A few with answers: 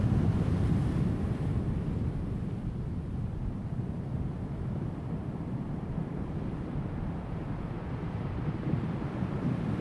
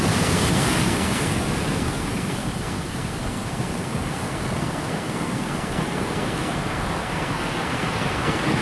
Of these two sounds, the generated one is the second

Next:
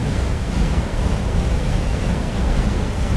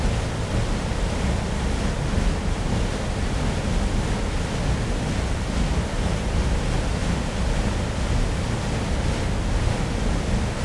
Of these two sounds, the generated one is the first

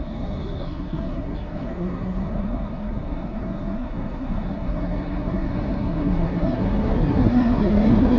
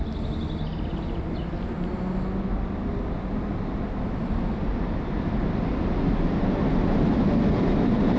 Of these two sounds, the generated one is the first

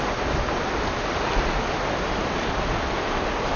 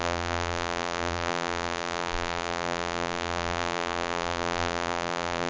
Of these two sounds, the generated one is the second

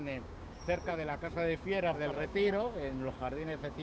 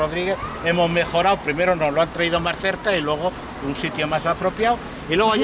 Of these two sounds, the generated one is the first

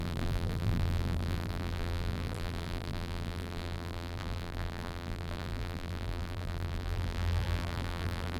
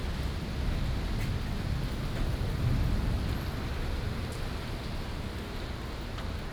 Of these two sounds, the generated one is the first